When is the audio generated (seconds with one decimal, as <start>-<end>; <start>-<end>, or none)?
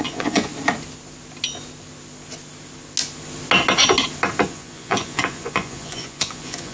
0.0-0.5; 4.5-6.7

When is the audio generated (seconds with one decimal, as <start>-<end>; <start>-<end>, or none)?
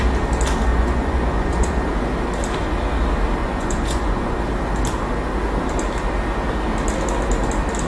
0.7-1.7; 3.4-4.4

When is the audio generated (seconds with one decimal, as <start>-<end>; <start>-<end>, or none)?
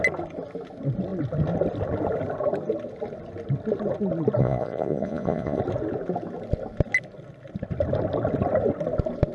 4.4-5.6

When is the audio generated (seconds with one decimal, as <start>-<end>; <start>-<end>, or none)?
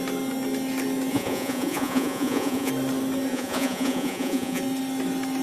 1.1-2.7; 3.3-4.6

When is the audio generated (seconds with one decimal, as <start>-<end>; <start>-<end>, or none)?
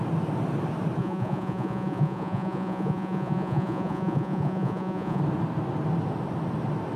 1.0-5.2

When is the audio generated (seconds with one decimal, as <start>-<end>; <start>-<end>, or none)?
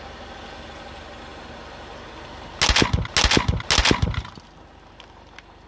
none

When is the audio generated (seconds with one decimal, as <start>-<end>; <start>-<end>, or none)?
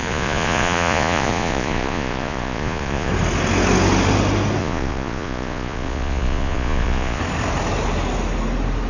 0.0-3.1; 4.6-7.2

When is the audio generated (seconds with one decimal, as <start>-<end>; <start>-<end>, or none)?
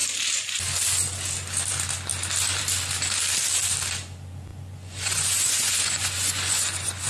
4.5-7.1